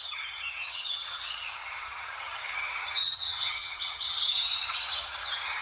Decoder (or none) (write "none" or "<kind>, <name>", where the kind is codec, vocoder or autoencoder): vocoder, HiFi-GAN